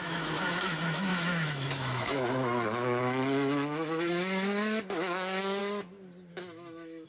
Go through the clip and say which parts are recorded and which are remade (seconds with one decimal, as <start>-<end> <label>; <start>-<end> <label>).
0.0-5.6 remade; 5.6-6.3 recorded; 6.3-7.1 remade